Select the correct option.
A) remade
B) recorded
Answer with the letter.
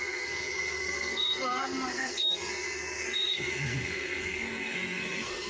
A